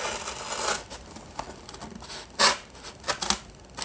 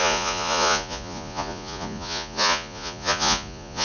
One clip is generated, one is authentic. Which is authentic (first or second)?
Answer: first